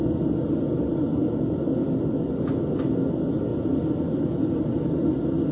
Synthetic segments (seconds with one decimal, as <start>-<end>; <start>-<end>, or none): none

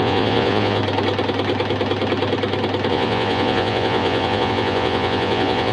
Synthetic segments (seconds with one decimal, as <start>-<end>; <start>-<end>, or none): 0.0-0.8; 2.9-5.7

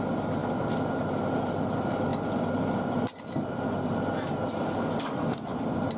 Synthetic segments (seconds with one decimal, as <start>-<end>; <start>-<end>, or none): none